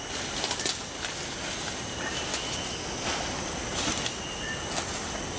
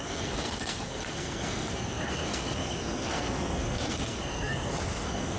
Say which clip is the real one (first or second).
first